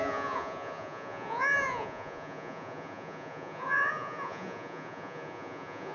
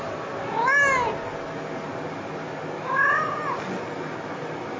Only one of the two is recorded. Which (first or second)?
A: second